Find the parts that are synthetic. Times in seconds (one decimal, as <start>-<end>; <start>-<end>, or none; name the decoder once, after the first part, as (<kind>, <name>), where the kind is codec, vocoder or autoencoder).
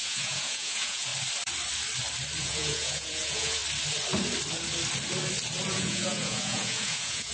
0.0-1.1 (vocoder, Vocos); 2.4-3.6; 5.7-7.3